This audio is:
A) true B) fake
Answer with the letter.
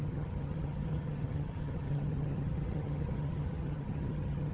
B